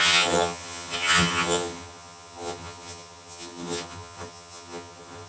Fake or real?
fake